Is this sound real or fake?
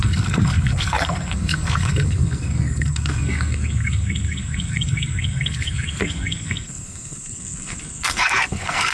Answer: fake